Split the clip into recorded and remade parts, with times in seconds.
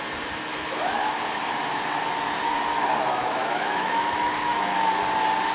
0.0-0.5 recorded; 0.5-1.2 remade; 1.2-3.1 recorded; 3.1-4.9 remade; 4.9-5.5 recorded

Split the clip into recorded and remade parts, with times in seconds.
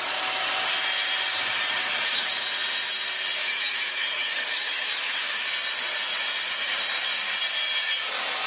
0.0-1.8 recorded; 1.8-2.3 remade; 2.3-3.4 recorded; 3.4-5.4 remade; 5.4-8.5 recorded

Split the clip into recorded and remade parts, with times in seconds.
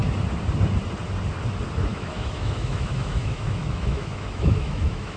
0.0-1.9 recorded; 1.9-5.2 remade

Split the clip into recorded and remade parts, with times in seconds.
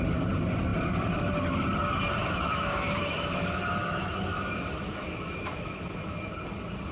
0.0-2.2 recorded; 2.2-6.3 remade; 6.3-6.9 recorded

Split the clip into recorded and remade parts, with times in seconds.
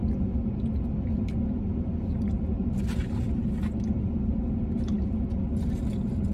0.0-6.3 recorded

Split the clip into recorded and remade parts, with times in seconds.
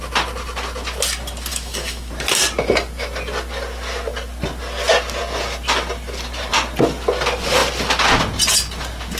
0.0-1.5 recorded; 1.5-2.1 remade; 2.1-9.2 recorded